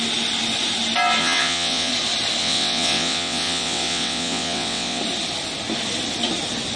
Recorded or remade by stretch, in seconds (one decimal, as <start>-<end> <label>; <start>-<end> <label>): 0.0-1.2 recorded; 1.2-1.9 remade; 1.9-2.4 recorded; 2.4-5.0 remade; 5.0-6.8 recorded